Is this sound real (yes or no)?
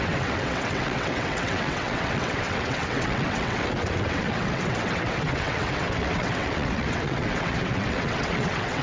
no